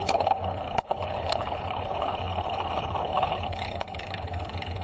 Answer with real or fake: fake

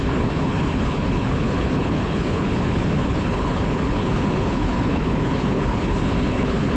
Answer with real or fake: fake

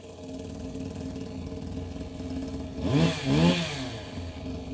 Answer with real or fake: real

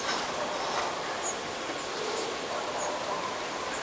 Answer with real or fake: real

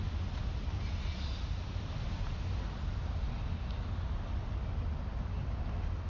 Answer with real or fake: real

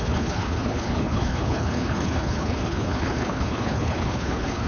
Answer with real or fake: fake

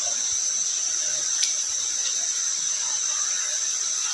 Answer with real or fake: real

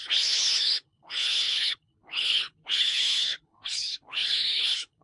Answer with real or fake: fake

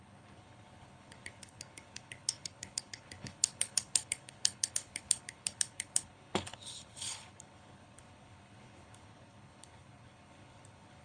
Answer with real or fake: fake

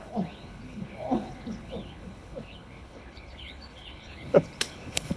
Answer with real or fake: fake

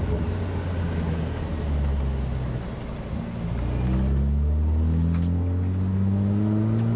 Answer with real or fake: real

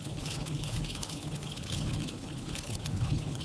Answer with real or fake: fake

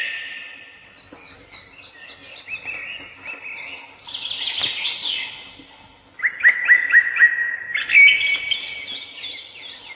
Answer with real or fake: real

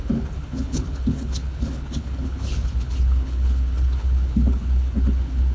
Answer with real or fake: fake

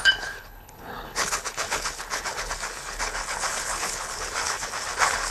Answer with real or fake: fake